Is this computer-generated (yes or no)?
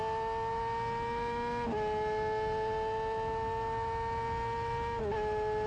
no